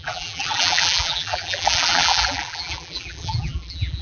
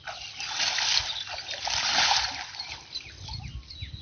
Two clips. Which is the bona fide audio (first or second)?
second